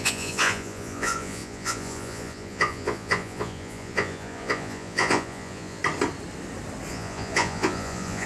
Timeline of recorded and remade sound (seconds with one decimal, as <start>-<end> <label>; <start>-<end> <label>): 0.0-5.8 remade; 5.8-6.9 recorded; 6.9-8.3 remade